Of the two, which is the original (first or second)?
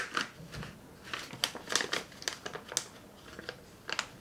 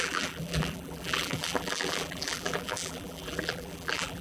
first